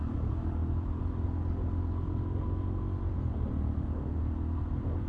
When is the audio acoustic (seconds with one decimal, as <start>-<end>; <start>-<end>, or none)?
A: 0.0-5.1